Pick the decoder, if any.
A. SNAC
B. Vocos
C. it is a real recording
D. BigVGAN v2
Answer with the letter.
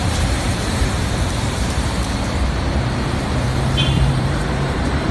D